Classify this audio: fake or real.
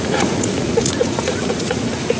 fake